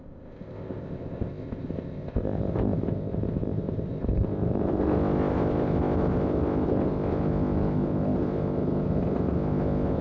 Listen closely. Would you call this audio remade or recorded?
remade